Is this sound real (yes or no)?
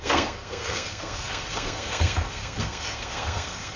no